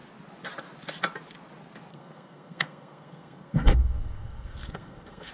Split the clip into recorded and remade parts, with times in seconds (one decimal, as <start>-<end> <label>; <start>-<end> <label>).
0.0-1.9 recorded; 1.9-5.3 remade